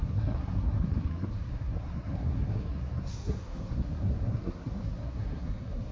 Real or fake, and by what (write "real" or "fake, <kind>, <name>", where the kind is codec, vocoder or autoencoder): fake, codec, SNAC